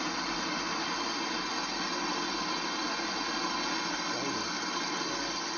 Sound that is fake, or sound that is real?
real